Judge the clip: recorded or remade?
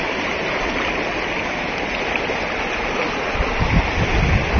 recorded